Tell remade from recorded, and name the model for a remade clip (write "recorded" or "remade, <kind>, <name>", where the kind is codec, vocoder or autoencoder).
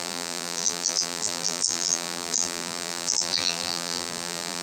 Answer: remade, vocoder, BigVGAN v2